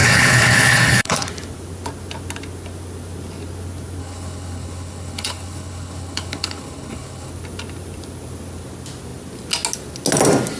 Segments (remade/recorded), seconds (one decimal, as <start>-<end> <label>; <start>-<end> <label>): 0.0-1.3 remade; 1.3-4.0 recorded; 4.0-7.3 remade; 7.3-10.6 recorded